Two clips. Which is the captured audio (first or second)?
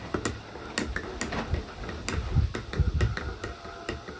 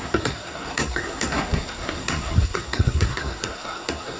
first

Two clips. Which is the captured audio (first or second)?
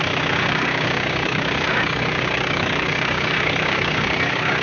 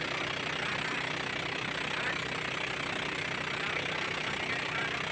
second